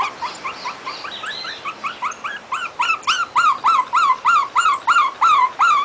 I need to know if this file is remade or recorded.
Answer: remade